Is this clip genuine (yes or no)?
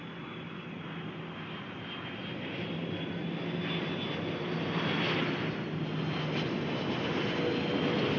yes